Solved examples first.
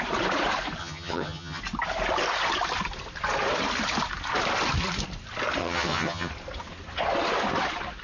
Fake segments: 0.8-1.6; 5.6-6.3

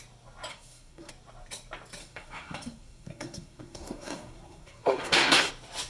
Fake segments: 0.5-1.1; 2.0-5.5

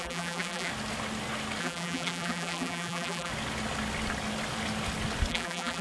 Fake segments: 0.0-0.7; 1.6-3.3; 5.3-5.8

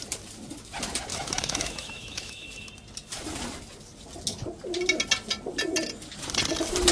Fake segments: 1.1-2.7

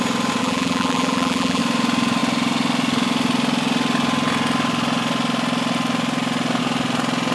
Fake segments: 0.4-1.6

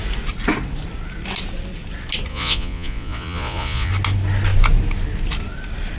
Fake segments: 2.3-3.9

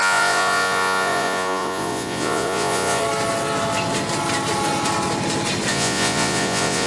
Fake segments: 0.0-3.0; 5.7-6.9